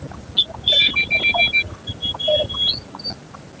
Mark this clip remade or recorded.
recorded